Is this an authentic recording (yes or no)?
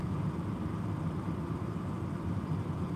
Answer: yes